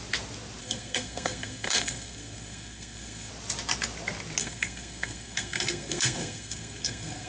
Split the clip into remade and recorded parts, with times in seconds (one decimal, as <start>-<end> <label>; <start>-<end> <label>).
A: 0.0-0.6 recorded; 0.6-3.3 remade; 3.3-4.4 recorded; 4.4-7.3 remade